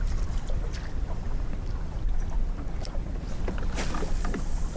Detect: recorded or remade recorded